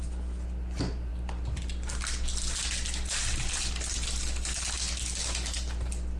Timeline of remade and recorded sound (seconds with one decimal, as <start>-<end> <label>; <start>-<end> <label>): 0.0-6.2 recorded